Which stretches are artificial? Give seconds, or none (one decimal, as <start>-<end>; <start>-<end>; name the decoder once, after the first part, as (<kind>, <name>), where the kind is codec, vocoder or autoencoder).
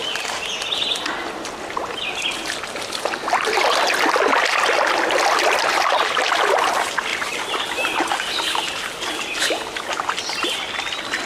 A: none